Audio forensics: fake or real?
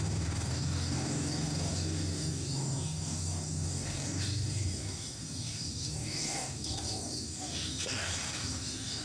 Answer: fake